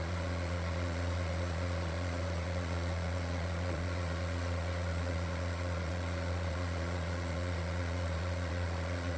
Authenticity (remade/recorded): remade